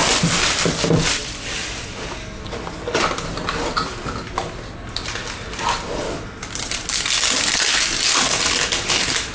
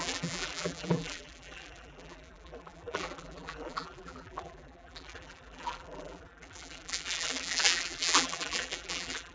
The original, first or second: first